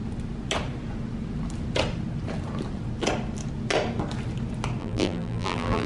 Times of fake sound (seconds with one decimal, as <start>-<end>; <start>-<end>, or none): 4.8-5.9